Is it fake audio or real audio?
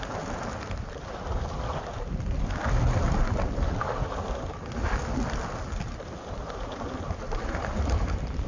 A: real